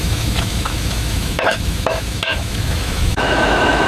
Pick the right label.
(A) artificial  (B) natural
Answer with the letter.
A